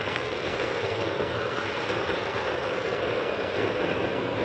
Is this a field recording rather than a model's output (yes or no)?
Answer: no